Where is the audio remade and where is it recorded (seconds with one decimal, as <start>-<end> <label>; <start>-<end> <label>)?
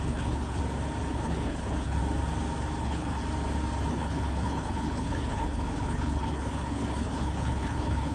0.0-0.6 remade; 0.6-1.1 recorded; 1.1-2.0 remade; 2.0-2.8 recorded; 2.8-3.2 remade; 3.2-3.9 recorded; 3.9-8.1 remade